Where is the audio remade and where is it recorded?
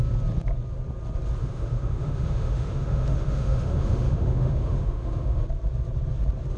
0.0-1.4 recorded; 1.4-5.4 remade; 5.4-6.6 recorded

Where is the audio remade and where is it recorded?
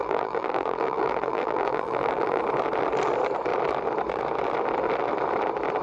0.0-2.4 remade; 2.4-5.8 recorded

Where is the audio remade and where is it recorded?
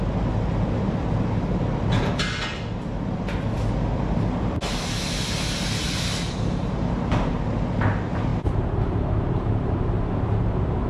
0.0-10.9 recorded